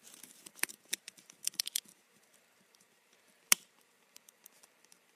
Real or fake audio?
fake